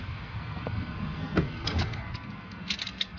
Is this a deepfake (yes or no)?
yes